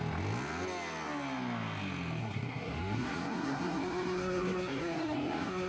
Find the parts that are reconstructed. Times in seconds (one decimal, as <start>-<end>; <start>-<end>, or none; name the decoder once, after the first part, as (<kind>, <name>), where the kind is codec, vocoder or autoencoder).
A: 2.2-5.7 (codec, SNAC)